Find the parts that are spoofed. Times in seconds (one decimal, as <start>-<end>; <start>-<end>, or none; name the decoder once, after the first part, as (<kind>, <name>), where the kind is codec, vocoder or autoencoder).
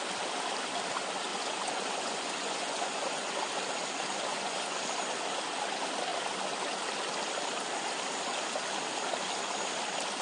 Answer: 1.3-3.3 (vocoder, Vocos); 4.3-4.8